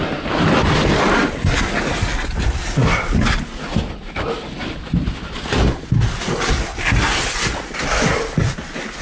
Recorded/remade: recorded